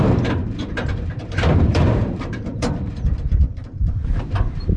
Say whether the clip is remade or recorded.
remade